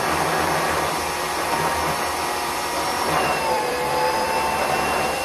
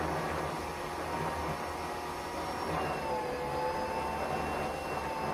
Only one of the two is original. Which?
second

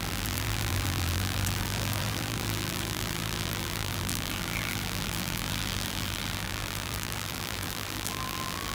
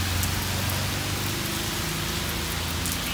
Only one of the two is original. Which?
second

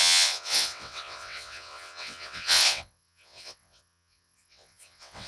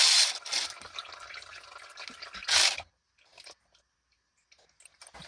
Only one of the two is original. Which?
second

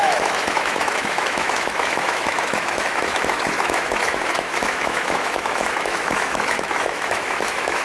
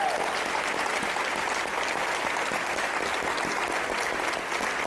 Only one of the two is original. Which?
second